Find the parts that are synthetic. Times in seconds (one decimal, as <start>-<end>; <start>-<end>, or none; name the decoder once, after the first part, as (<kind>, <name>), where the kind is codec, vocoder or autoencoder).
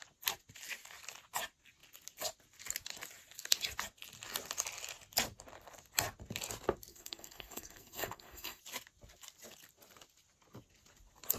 6.9-8.6 (codec, SNAC)